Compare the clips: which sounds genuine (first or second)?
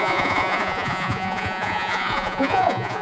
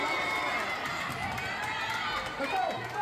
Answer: second